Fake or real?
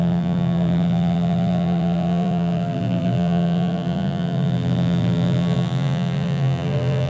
fake